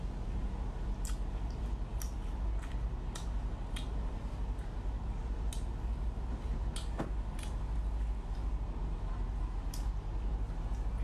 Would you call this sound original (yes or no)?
yes